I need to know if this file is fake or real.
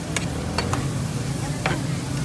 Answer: real